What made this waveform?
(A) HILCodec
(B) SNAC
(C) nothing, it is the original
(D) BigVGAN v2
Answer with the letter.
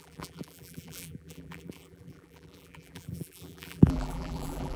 D